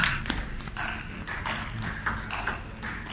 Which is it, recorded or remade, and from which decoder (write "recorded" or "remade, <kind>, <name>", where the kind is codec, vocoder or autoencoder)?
recorded